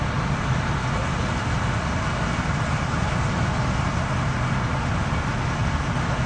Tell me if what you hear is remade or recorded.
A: recorded